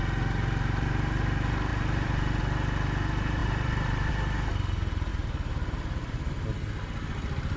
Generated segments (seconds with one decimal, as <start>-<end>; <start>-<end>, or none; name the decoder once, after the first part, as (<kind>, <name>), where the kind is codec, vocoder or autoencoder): 1.7-2.4 (vocoder, BigVGAN v2); 3.4-4.1; 5.1-6.3